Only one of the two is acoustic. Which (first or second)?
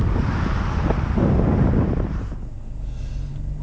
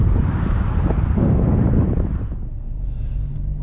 first